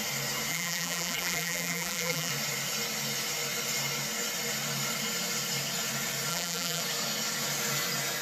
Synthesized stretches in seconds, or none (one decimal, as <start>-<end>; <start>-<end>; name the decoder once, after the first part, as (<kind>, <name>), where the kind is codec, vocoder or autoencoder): 0.5-2.3 (vocoder, BigVGAN v2); 6.3-6.8